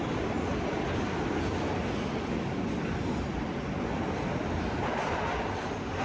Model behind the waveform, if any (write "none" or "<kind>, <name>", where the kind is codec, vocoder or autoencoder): none